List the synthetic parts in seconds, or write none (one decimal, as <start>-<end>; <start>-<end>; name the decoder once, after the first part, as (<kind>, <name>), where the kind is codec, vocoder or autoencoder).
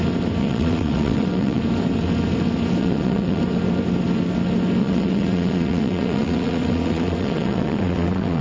0.4-1.6 (vocoder, WaveNeXt); 2.8-3.4; 4.8-8.4